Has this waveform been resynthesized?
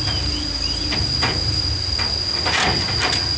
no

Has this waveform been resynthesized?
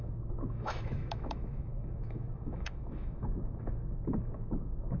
yes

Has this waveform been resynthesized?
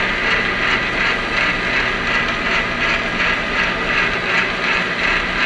no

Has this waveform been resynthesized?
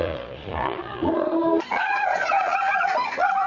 yes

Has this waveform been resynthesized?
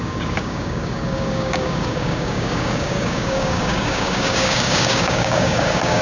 yes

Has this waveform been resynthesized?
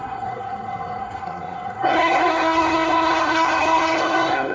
yes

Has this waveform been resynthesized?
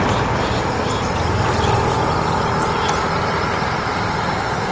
no